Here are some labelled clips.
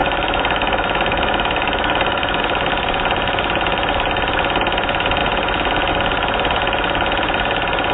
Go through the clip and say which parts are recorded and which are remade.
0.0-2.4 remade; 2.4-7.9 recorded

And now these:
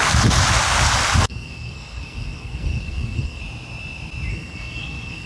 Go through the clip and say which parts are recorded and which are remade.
0.0-1.2 recorded; 1.2-3.4 remade; 3.4-4.3 recorded; 4.3-5.3 remade